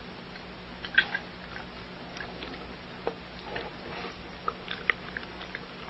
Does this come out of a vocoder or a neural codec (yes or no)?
no